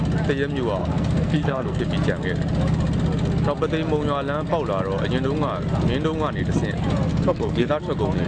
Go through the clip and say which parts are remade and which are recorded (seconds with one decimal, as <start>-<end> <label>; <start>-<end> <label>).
0.0-0.8 recorded; 0.8-1.8 remade; 1.8-7.1 recorded; 7.1-7.7 remade; 7.7-8.3 recorded